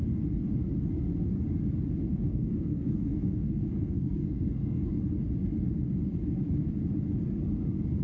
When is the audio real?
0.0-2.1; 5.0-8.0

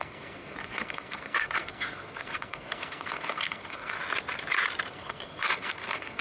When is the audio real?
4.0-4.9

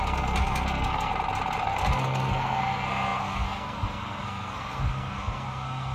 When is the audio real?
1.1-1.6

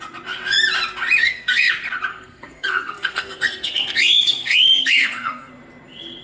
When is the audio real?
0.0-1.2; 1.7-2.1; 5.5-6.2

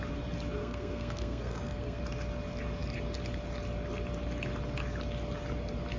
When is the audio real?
0.0-0.6; 2.0-6.0

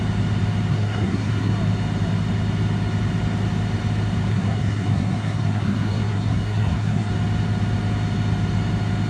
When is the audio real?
0.0-0.7; 1.5-4.3; 7.1-9.1

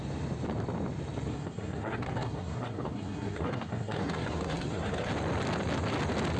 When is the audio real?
0.0-1.3; 5.1-6.4

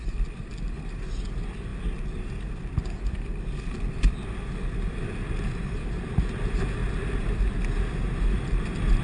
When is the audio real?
0.0-9.0